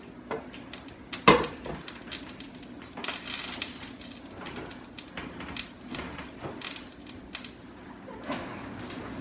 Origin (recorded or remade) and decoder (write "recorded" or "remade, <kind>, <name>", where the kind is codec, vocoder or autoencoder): recorded